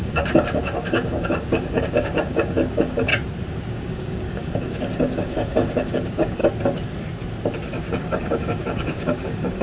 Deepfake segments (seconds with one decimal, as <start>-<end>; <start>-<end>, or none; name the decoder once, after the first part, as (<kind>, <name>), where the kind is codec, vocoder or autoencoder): 0.0-3.1 (codec, DAC); 3.7-6.4; 7.9-9.6